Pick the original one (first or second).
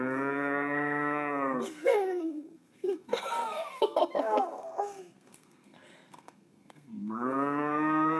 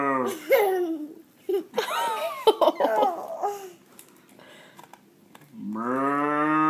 second